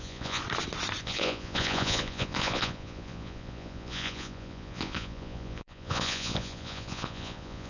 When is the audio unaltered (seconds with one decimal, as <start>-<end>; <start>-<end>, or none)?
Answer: 0.4-1.0